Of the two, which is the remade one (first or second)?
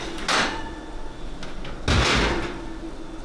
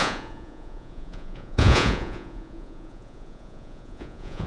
second